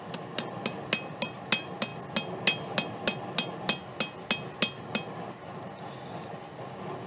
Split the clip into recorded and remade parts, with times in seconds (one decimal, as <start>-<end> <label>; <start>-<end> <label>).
0.0-7.1 recorded